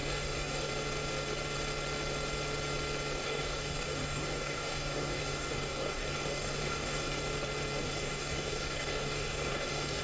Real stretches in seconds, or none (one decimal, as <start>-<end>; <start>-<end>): 0.7-3.2; 7.2-7.8